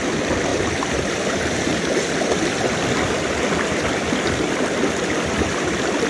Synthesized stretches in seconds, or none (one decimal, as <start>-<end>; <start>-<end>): 0.5-1.8